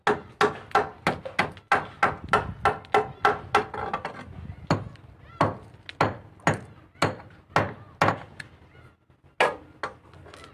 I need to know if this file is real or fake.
real